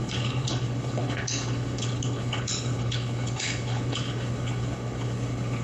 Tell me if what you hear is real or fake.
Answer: fake